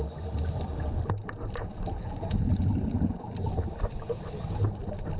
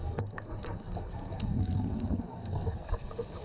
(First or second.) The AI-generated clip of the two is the second